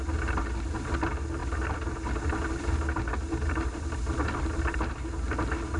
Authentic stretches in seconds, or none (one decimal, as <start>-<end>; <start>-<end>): 0.0-5.8